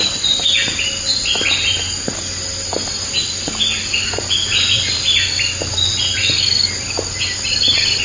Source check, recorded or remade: recorded